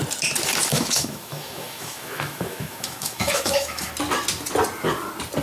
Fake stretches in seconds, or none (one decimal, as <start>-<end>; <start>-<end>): 0.7-3.9